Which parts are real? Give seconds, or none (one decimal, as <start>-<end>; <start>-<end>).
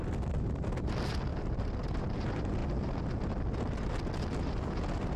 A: 0.0-1.3; 2.0-5.2